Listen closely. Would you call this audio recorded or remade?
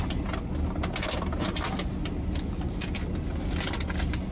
recorded